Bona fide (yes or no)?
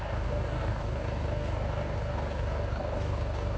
no